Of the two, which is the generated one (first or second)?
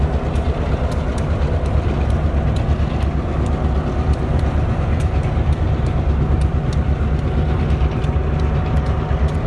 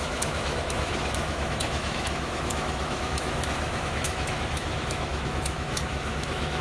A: second